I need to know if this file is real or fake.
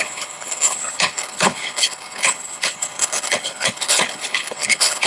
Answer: fake